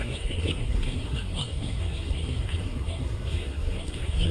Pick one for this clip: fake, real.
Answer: fake